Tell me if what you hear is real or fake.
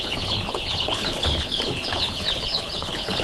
fake